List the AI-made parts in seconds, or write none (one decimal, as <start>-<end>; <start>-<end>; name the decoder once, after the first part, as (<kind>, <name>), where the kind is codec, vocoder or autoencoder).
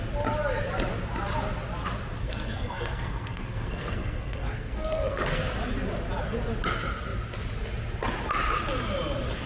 2.2-5.4 (codec, SNAC)